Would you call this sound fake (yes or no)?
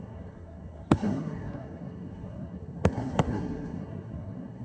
yes